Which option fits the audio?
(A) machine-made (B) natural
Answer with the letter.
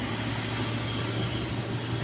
B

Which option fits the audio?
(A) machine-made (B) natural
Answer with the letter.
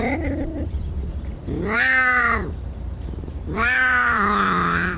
A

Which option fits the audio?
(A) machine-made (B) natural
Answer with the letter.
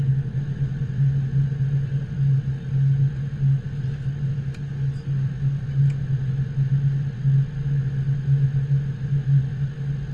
B